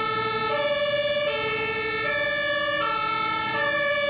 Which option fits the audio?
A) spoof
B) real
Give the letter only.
B